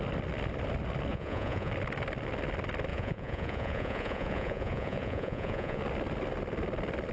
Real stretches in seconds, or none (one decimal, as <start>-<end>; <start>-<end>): 0.0-1.1; 1.7-2.9; 5.8-7.1